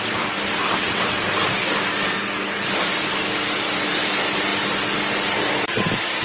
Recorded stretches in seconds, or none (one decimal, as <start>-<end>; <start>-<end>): 0.0-0.6; 1.2-6.2